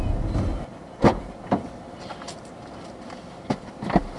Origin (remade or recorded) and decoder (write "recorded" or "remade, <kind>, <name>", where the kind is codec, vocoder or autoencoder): recorded